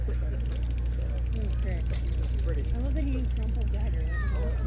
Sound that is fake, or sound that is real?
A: real